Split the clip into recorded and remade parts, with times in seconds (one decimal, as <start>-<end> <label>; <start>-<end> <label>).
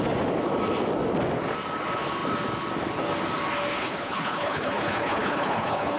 0.0-3.8 recorded; 3.8-6.0 remade